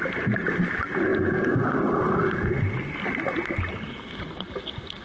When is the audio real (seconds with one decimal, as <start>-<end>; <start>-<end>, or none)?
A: 0.0-5.0